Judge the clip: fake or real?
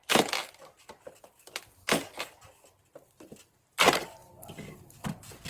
real